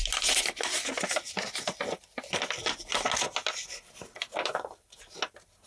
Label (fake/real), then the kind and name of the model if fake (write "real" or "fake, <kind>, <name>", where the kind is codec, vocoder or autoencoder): real